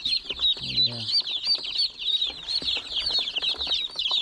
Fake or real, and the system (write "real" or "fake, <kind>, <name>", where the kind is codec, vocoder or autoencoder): real